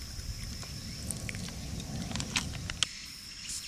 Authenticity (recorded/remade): recorded